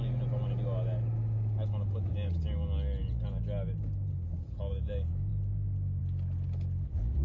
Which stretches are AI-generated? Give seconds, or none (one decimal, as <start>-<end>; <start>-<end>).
none